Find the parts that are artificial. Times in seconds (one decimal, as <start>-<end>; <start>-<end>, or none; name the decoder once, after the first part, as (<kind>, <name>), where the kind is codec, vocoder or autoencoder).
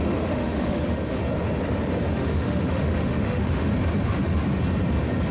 0.0-1.2 (autoencoder, DAC-VAE); 2.1-3.7